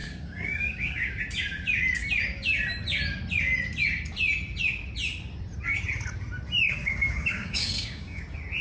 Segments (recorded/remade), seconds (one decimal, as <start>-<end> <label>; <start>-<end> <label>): 0.0-1.2 remade; 1.2-6.7 recorded; 6.7-8.2 remade; 8.2-8.6 recorded